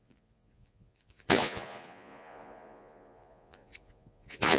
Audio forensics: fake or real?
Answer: fake